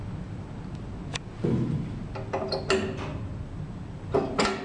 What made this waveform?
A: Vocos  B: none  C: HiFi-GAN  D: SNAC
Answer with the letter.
B